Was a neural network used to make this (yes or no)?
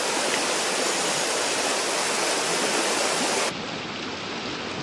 no